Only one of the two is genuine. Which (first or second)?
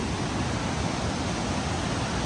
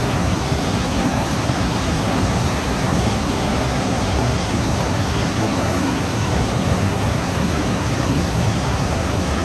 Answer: first